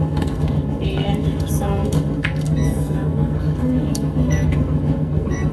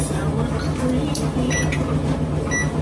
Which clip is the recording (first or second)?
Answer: second